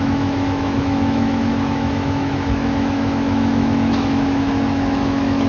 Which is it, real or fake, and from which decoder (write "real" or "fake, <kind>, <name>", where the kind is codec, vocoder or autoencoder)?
fake, autoencoder, DAC-VAE